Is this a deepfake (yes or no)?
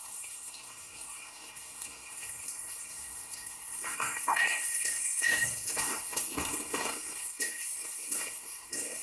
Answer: yes